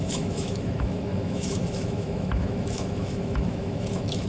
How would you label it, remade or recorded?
remade